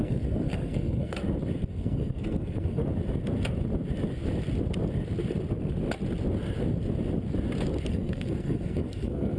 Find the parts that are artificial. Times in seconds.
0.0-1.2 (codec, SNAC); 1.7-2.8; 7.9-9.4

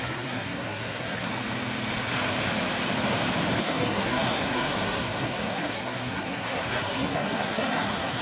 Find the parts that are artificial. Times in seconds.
0.0-1.3 (codec, SNAC); 3.6-8.2

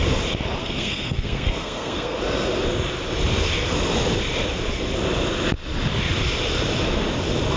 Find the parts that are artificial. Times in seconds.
0.6-2.2 (codec, SNAC)